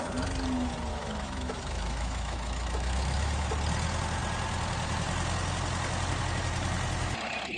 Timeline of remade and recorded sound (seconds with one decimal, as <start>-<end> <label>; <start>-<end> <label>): 0.0-0.9 recorded; 0.9-3.5 remade; 3.5-7.6 recorded